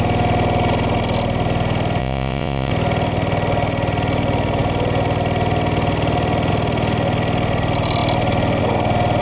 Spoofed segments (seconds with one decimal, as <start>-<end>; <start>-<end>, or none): 2.0-2.7